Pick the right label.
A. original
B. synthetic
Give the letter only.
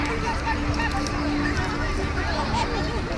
A